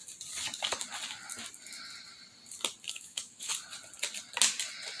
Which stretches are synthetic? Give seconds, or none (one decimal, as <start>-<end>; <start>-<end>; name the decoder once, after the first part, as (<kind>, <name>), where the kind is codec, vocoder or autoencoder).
2.9-3.5 (autoencoder, DAC-VAE)